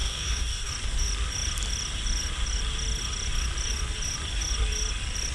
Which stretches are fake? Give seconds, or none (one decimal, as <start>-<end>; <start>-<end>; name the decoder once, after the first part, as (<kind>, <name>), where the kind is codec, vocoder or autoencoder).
0.0-0.7 (codec, DAC)